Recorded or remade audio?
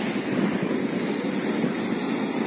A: recorded